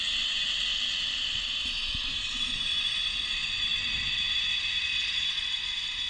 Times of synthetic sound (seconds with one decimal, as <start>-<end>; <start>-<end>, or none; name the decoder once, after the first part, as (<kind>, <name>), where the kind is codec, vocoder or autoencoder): 0.7-2.1 (vocoder, BigVGAN v2)